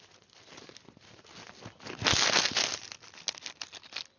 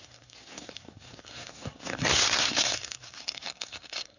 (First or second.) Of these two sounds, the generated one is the second